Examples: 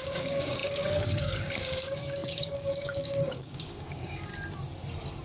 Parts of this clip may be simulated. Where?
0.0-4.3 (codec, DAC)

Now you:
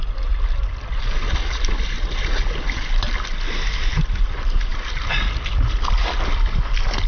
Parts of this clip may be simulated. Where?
none

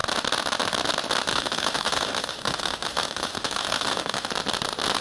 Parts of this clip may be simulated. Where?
1.3-4.3 (autoencoder, DAC-VAE)

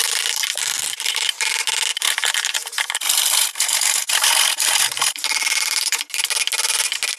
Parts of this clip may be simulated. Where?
0.0-1.5 (vocoder, BigVGAN v2); 1.9-6.0

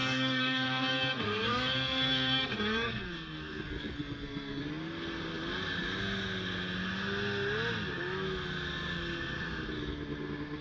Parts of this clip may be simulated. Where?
0.0-4.6 (codec, SNAC)

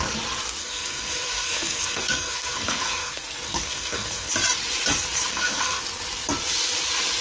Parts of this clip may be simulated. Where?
0.6-4.3 (codec, SNAC); 5.3-5.8

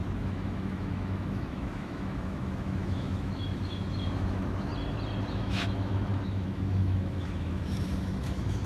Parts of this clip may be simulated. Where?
0.0-4.7 (autoencoder, DAC-VAE); 5.3-8.7

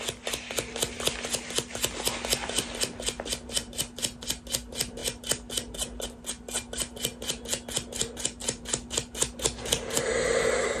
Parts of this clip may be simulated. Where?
none